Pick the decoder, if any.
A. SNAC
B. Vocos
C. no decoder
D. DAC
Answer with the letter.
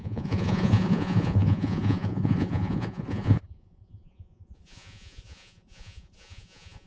B